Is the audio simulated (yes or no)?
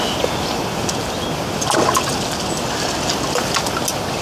no